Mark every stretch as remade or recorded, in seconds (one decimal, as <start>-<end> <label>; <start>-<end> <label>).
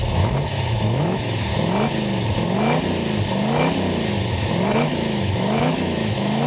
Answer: 0.0-0.7 recorded; 0.7-1.5 remade; 1.5-4.1 recorded; 4.1-6.5 remade